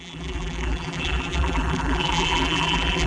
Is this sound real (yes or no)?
no